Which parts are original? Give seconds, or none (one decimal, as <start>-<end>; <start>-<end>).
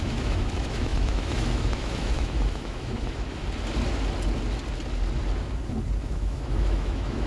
3.4-6.0